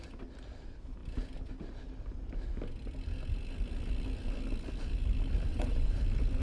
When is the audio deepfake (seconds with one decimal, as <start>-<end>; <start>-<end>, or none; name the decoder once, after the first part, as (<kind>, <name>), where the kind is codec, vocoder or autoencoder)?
5.5-6.0 (vocoder, WaveNeXt)